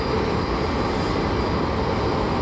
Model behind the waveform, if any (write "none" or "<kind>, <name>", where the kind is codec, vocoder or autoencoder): none